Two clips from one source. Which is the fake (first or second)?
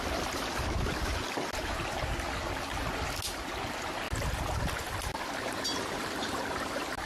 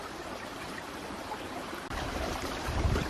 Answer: second